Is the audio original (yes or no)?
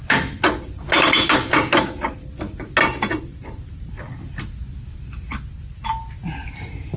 yes